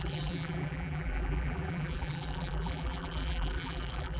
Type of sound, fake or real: fake